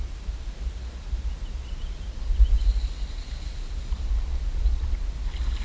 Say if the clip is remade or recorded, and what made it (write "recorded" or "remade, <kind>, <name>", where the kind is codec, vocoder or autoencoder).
recorded